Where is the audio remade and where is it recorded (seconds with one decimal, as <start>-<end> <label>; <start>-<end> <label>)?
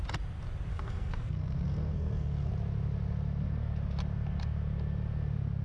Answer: 0.0-0.7 recorded; 0.7-2.5 remade; 2.5-5.6 recorded